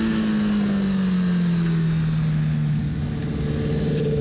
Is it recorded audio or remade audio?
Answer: recorded